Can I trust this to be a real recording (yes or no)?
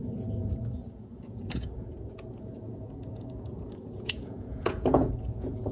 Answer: no